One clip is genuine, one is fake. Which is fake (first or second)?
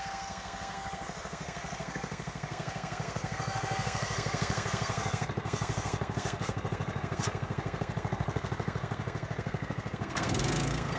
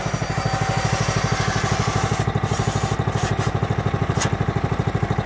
first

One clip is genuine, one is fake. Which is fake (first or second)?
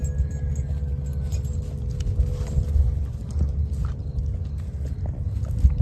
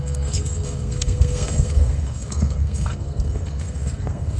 second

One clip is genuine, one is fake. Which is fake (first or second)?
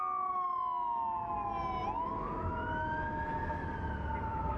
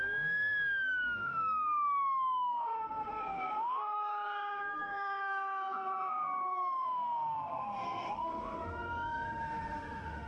second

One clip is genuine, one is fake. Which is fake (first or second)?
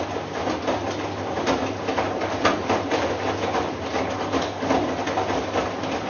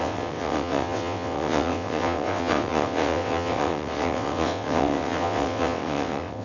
second